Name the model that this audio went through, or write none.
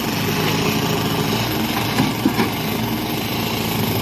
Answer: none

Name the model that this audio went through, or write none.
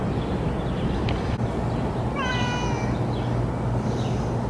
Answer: none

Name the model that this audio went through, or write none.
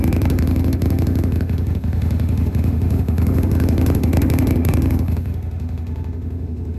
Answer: autoencoder, DAC-VAE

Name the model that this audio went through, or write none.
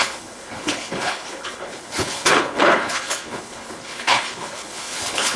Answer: codec, HILCodec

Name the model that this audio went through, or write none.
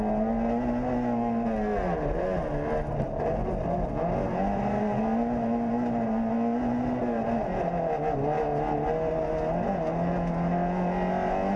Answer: none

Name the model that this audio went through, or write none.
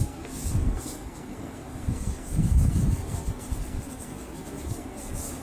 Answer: codec, SNAC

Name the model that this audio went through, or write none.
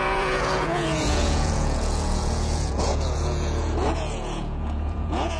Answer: vocoder, Vocos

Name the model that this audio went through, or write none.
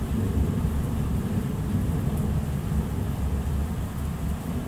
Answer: none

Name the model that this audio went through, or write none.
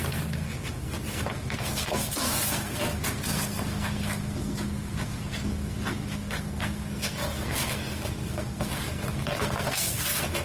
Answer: codec, SNAC